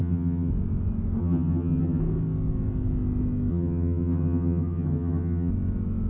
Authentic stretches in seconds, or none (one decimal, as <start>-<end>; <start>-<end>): 0.5-1.2; 2.0-3.5; 5.5-6.1